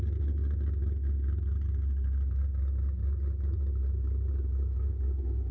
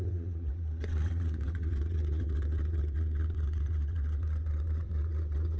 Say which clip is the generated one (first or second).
second